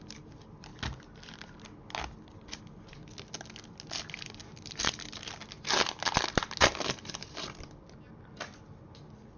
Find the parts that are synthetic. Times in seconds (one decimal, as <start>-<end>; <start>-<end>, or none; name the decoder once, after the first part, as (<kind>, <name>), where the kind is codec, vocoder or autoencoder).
none